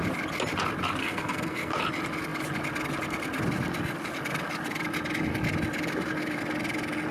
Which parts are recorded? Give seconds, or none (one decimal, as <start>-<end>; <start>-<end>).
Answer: 0.0-1.0; 1.8-7.1